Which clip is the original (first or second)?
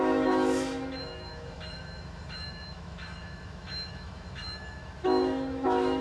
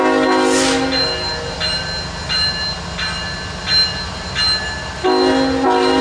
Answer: second